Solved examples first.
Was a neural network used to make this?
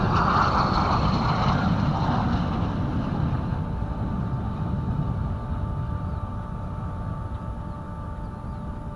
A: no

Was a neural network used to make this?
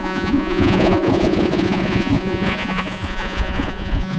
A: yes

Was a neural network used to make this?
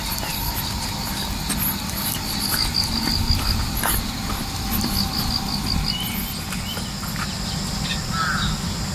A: no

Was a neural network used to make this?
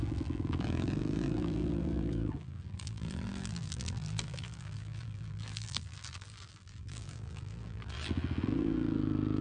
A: yes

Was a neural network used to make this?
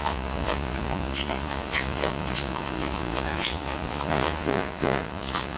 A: yes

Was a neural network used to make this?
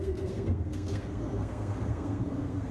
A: yes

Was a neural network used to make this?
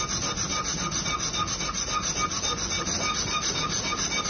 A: no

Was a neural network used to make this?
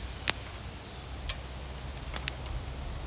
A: no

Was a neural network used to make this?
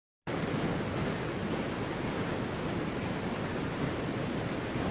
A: no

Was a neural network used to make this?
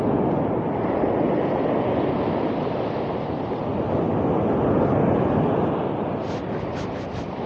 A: no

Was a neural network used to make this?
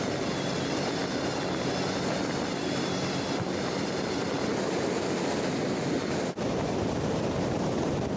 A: no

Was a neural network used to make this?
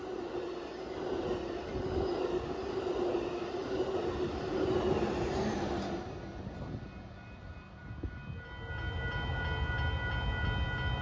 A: no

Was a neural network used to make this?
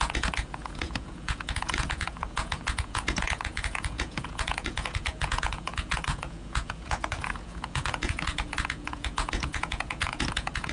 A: yes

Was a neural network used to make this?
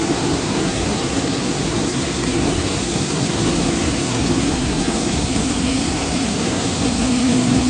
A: yes